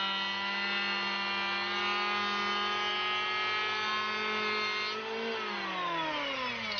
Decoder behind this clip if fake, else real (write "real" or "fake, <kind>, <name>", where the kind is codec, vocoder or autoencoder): real